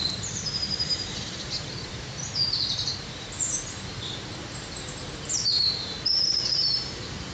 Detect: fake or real fake